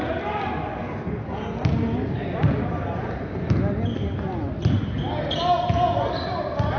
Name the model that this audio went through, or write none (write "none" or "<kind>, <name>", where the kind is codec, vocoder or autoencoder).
none